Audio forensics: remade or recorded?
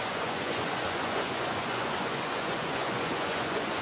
remade